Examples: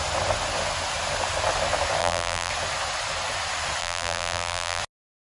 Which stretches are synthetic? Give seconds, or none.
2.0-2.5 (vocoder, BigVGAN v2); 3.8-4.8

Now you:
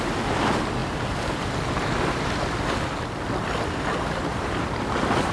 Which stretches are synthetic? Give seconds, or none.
0.8-1.7 (vocoder, BigVGAN v2); 4.3-4.8

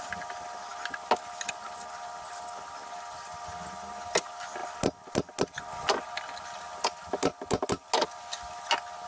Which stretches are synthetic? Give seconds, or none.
none

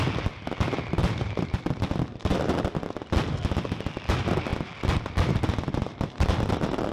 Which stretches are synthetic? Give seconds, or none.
1.0-1.6 (vocoder, BigVGAN v2); 4.5-5.4

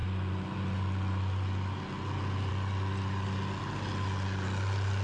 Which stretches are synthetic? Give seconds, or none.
none